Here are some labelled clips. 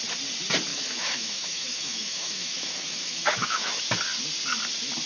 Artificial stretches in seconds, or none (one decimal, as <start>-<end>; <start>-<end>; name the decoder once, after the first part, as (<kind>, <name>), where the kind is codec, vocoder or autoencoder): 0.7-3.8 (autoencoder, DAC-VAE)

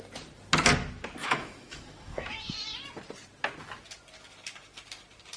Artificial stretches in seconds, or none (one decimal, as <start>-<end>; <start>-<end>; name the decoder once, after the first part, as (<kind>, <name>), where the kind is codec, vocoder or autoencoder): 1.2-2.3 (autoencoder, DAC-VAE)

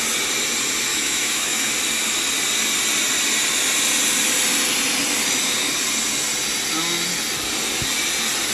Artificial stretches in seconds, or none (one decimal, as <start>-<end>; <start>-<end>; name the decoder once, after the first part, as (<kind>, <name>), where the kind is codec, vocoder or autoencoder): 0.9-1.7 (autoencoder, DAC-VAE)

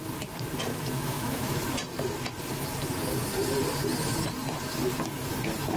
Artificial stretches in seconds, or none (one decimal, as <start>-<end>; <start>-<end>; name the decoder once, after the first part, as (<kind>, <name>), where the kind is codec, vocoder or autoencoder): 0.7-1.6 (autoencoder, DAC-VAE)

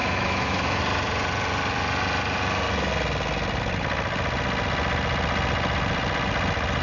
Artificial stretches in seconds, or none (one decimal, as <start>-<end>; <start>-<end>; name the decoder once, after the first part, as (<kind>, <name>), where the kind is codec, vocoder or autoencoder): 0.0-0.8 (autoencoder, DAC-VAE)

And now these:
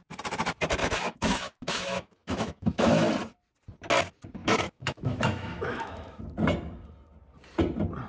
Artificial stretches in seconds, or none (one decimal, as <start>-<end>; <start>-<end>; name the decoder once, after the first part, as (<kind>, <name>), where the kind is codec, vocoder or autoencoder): 0.8-3.1 (autoencoder, DAC-VAE); 4.4-6.2

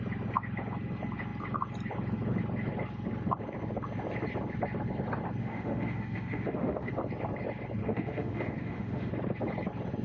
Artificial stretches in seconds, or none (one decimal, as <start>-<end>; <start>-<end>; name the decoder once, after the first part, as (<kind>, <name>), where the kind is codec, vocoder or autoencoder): 5.4-6.9 (autoencoder, DAC-VAE); 7.8-9.1

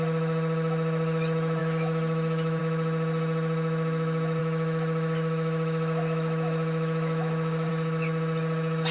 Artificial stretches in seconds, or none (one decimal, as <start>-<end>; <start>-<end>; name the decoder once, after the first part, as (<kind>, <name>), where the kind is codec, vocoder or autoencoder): 1.6-2.6 (autoencoder, DAC-VAE); 4.4-7.7